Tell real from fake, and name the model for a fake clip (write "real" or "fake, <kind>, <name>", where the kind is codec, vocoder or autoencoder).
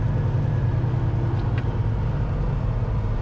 real